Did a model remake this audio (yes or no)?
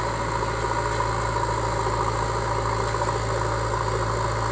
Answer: no